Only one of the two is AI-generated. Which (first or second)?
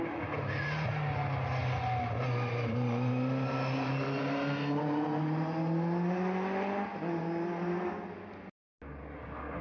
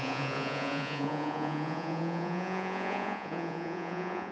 second